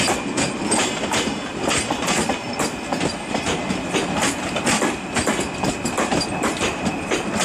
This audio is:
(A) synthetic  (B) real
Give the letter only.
B